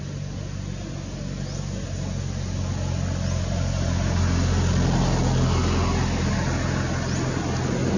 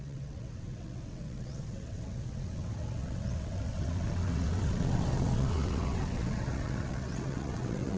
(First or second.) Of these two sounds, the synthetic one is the second